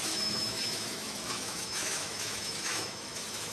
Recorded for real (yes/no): no